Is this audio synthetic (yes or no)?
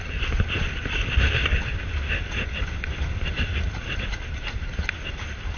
no